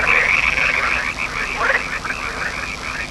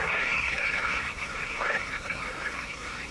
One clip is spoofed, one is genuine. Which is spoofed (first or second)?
second